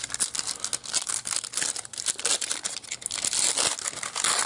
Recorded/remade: recorded